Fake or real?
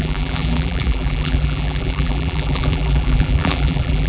fake